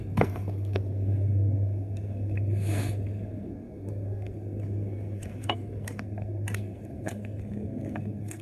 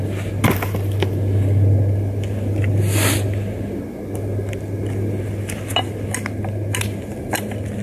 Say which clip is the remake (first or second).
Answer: first